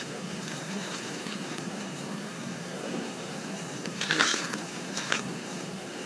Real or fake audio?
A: fake